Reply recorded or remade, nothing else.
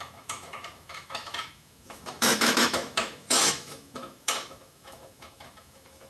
remade